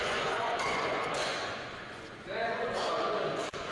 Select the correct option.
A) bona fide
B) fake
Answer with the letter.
B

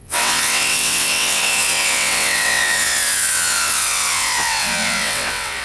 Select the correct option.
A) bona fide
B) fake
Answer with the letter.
B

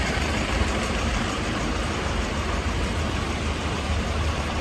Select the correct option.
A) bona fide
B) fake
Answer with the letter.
B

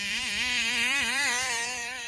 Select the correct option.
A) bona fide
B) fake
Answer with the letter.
B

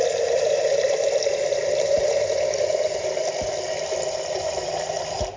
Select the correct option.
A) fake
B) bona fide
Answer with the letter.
B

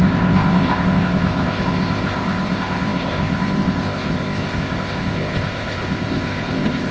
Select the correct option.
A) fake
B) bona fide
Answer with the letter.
A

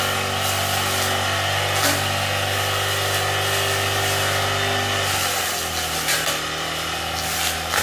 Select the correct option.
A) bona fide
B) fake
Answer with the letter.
A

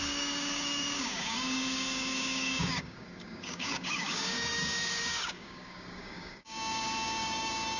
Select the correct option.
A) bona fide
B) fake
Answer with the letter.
B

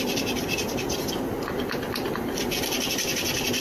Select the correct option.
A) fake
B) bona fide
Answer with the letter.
B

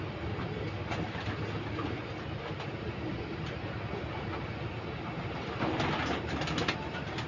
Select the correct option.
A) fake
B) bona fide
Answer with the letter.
B